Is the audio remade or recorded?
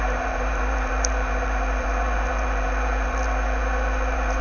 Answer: remade